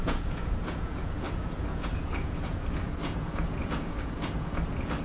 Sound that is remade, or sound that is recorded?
remade